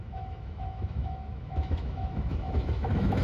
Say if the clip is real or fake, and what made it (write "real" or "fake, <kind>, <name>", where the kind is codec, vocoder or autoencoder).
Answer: fake, autoencoder, DAC-VAE